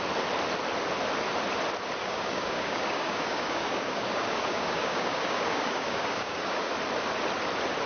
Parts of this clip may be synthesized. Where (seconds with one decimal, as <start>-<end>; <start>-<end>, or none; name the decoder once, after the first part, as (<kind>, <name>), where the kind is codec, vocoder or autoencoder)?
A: 2.0-6.7 (codec, DAC)